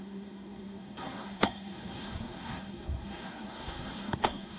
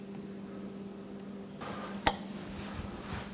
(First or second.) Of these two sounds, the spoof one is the first